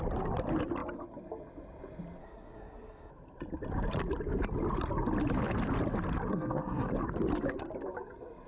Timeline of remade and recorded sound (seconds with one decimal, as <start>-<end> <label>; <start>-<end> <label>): 0.0-2.2 recorded; 2.2-3.1 remade; 3.1-6.3 recorded; 6.3-6.9 remade; 6.9-8.5 recorded